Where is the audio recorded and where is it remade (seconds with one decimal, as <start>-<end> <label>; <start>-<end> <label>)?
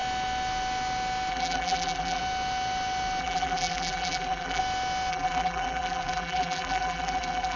0.0-1.3 recorded; 1.3-2.2 remade; 2.2-3.2 recorded; 3.2-4.6 remade; 4.6-5.1 recorded; 5.1-7.6 remade